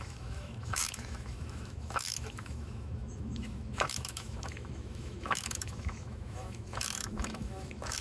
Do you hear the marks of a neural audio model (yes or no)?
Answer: yes